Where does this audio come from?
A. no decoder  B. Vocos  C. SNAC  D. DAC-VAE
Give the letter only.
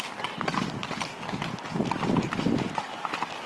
A